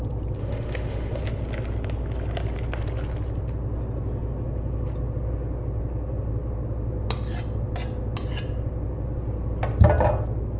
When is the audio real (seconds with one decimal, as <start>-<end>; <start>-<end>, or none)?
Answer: 0.0-0.4; 1.2-10.6